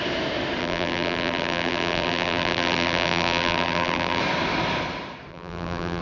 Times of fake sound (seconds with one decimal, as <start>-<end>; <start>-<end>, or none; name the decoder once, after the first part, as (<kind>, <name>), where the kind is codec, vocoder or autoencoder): 0.6-4.2 (vocoder, BigVGAN v2); 5.3-6.0